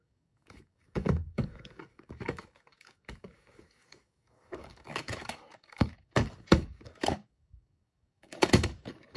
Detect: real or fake fake